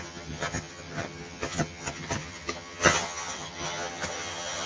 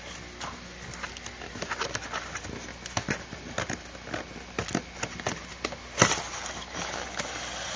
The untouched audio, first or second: second